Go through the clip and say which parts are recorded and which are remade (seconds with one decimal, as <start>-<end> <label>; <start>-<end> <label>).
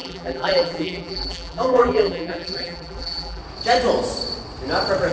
0.0-3.4 remade; 3.4-5.1 recorded